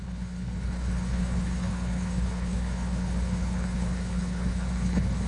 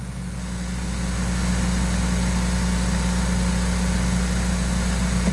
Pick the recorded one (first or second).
second